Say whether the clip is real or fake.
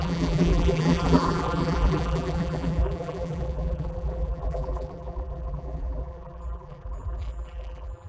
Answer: fake